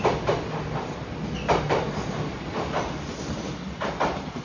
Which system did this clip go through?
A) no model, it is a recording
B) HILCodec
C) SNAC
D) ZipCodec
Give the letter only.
A